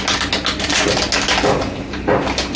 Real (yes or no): yes